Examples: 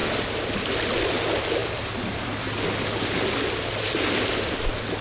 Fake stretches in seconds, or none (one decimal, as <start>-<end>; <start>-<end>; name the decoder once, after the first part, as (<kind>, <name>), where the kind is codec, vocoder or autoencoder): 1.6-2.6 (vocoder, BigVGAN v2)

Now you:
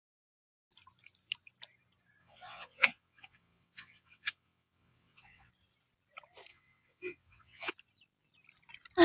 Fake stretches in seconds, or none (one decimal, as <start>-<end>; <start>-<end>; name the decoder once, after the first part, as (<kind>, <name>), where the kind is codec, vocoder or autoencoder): 2.2-5.5 (vocoder, WaveNeXt); 6.5-7.7

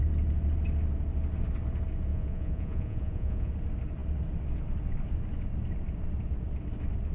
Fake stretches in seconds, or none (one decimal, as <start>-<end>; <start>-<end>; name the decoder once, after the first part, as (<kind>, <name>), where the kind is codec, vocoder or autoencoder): 2.1-3.5 (vocoder, Vocos)